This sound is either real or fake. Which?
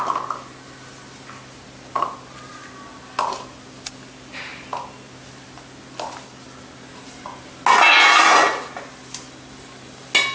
real